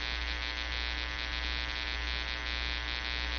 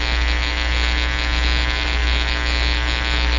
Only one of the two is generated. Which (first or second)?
second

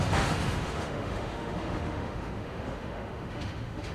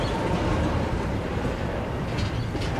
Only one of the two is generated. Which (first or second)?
first